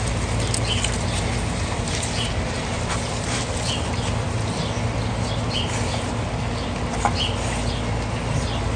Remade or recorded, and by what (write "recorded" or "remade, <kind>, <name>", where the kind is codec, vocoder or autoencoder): recorded